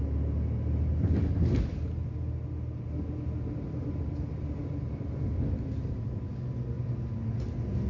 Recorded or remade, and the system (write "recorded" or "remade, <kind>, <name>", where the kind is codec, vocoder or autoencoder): recorded